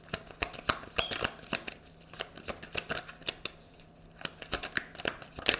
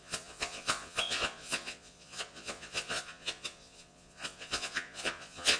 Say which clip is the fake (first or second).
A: second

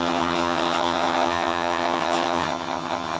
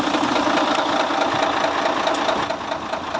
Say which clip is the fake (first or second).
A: first